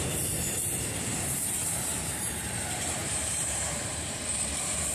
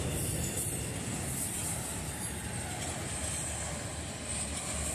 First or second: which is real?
second